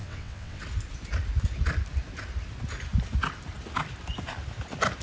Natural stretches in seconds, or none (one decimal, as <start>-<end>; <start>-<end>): 0.6-5.0